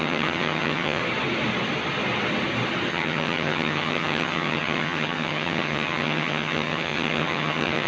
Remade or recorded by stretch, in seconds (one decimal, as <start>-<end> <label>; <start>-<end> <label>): 0.0-1.0 remade; 1.0-2.9 recorded; 2.9-7.9 remade